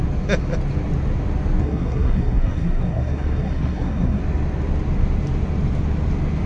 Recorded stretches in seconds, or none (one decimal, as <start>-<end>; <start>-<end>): 0.0-1.6; 4.2-6.5